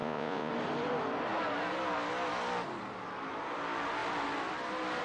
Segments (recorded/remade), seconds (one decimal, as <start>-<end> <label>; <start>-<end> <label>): 0.0-0.5 remade; 0.5-5.0 recorded